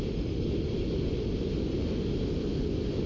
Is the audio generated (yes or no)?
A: no